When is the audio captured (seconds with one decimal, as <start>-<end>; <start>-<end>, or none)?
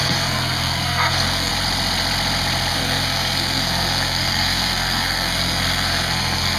1.5-2.7